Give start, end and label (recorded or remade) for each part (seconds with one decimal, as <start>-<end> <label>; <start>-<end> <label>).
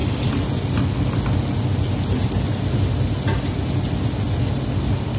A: 0.0-5.2 recorded